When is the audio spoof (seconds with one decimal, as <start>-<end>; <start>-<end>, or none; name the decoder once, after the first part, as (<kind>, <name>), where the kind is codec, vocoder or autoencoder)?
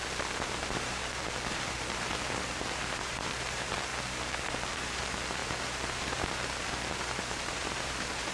0.0-1.0 (vocoder, BigVGAN v2); 1.5-3.9; 4.7-8.3